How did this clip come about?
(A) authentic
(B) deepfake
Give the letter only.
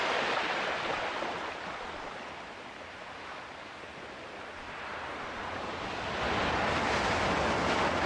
B